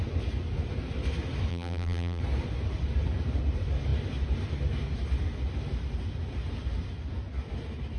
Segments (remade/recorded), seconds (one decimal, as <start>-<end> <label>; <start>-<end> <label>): 0.0-1.5 recorded; 1.5-2.2 remade; 2.2-8.0 recorded